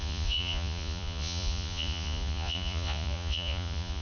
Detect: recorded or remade remade